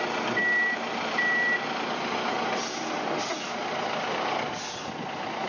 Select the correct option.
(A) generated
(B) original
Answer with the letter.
B